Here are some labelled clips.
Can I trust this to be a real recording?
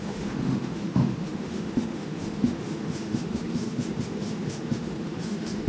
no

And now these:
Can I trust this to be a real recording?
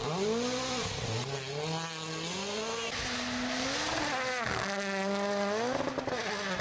yes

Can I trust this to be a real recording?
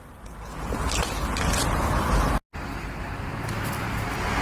yes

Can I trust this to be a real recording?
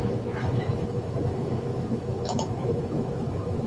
no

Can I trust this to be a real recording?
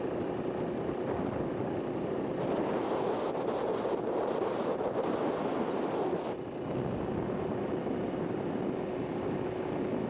yes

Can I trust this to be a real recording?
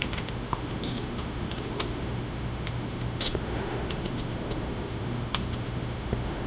no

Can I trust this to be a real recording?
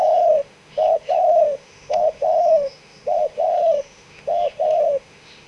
no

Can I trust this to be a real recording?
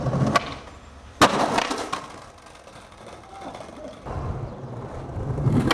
yes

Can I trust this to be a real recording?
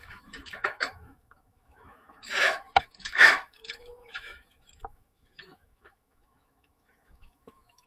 no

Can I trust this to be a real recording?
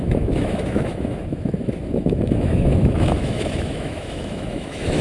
no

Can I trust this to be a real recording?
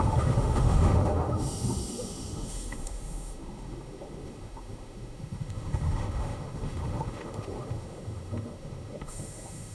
no